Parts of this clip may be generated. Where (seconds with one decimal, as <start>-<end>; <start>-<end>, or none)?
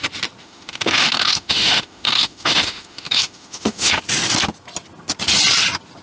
0.4-4.0